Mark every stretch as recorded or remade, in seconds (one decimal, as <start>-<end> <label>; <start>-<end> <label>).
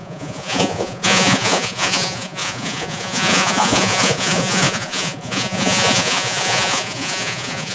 0.0-7.7 remade